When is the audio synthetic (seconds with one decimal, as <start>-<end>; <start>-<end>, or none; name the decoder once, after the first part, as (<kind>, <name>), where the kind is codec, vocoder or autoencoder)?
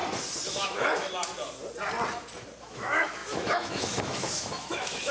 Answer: 0.5-1.3 (autoencoder, DAC-VAE); 2.6-5.1